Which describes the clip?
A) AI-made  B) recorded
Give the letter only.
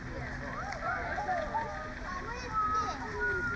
B